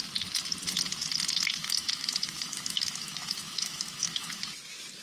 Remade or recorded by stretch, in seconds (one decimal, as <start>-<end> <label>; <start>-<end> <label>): 0.0-1.6 recorded; 1.6-4.6 remade; 4.6-5.0 recorded